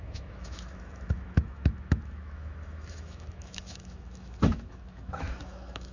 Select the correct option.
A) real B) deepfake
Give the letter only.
B